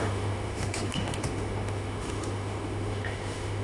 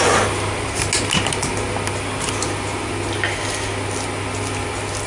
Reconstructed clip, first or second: first